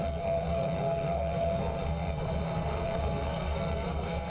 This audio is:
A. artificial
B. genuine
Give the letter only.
A